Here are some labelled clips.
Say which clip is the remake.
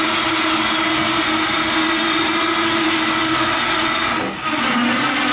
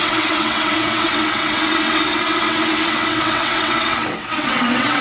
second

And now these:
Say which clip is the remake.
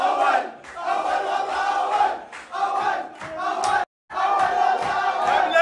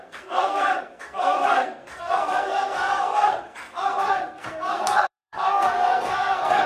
second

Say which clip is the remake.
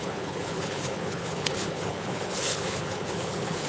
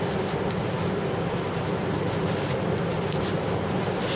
first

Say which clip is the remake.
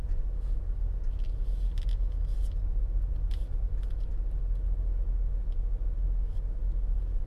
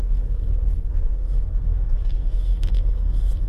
second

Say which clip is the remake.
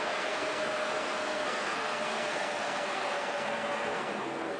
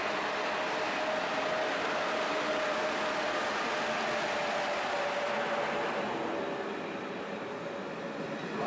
first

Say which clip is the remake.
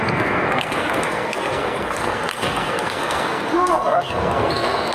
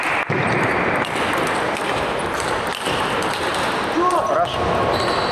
first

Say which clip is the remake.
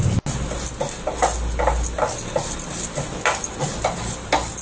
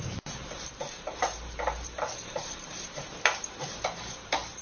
second